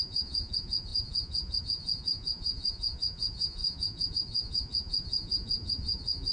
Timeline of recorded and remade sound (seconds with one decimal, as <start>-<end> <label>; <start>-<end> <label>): 0.0-6.3 remade